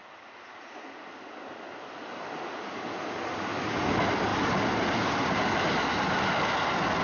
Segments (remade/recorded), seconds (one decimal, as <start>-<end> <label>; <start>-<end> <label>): 0.0-7.0 recorded